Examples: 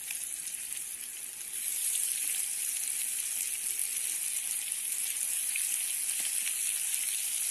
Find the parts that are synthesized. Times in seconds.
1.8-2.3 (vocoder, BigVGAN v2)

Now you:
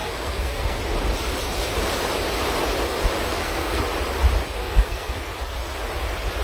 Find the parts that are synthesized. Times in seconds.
0.0-0.8 (codec, SNAC); 3.3-3.8; 4.6-5.2